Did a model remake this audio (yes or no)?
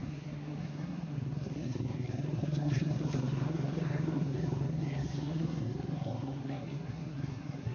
yes